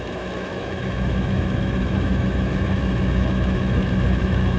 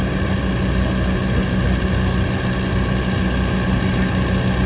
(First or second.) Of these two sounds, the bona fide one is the second